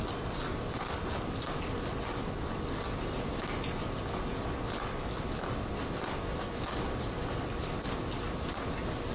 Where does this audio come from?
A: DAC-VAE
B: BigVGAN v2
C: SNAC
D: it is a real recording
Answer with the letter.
D